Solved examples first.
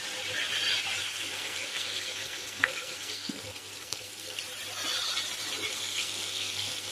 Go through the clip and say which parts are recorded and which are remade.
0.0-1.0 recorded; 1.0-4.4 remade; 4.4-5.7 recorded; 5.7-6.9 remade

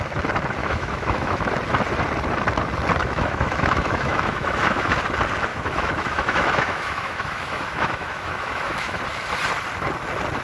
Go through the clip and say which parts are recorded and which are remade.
0.0-0.6 recorded; 0.6-1.5 remade; 1.5-3.0 recorded; 3.0-5.0 remade; 5.0-5.5 recorded; 5.5-9.0 remade; 9.0-10.4 recorded

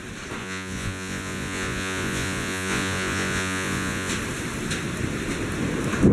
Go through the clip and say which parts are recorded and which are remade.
0.0-0.4 recorded; 0.4-4.1 remade; 4.1-6.1 recorded

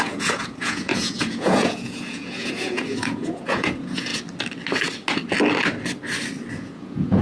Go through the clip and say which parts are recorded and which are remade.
0.0-4.1 remade; 4.1-6.5 recorded; 6.5-7.2 remade

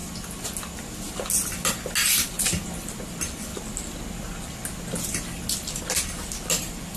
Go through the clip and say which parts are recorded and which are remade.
0.0-3.1 recorded; 3.1-3.5 remade; 3.5-5.8 recorded; 5.8-7.0 remade

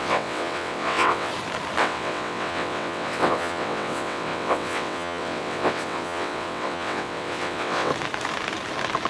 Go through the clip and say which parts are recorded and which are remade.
0.0-1.3 remade; 1.3-1.8 recorded; 1.8-7.9 remade; 7.9-9.1 recorded